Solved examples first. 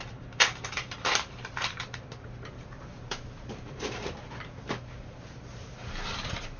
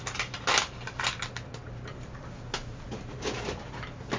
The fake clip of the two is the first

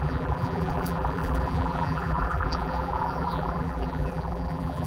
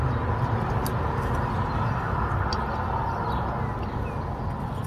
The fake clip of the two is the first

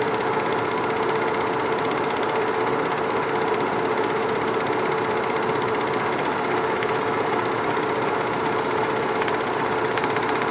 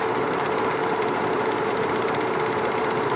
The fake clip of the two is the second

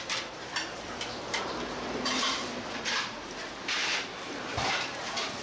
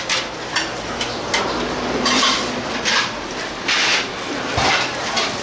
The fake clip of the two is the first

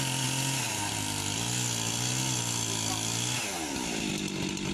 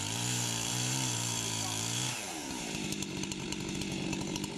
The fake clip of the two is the second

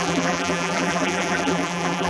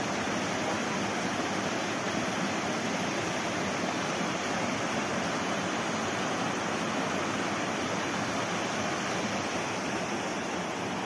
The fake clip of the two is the first